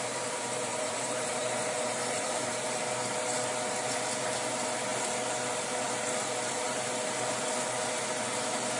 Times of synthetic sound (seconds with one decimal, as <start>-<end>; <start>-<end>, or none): 0.7-2.8